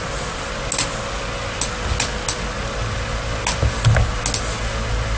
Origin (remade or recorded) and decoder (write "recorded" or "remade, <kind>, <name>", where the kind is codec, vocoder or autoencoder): recorded